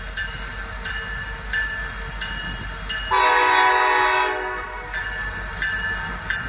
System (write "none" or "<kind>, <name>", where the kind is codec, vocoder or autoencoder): none